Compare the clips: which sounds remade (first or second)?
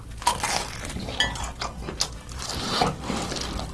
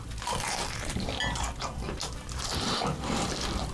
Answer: second